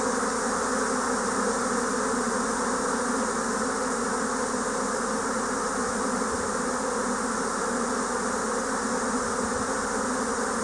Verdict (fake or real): real